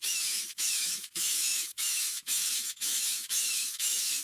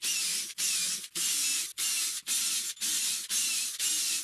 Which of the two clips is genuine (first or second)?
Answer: second